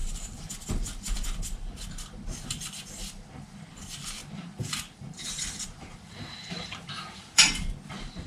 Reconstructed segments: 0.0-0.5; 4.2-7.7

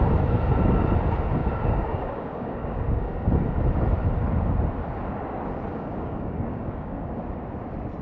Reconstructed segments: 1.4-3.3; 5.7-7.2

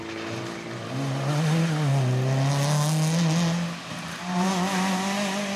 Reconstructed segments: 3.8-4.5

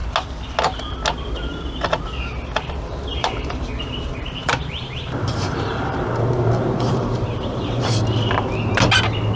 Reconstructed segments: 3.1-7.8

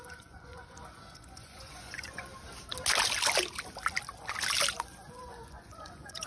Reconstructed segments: 0.0-2.3; 4.7-6.3

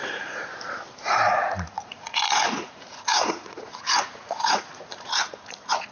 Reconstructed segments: 0.0-0.5; 1.7-5.9

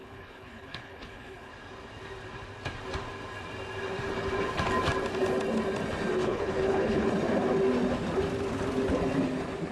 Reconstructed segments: 0.0-1.5; 6.2-7.1

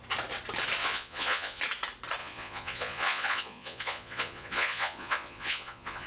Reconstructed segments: 0.8-1.6; 2.2-6.1